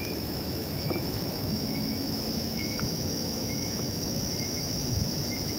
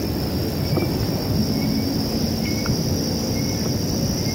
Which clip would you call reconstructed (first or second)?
first